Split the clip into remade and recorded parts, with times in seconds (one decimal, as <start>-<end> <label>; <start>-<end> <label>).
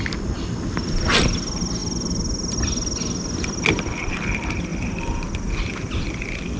0.0-6.6 recorded